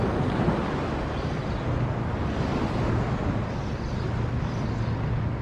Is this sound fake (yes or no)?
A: no